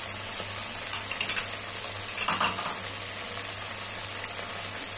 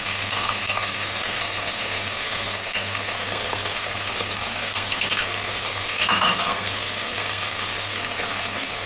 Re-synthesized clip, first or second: second